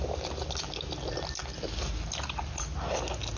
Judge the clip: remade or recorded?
recorded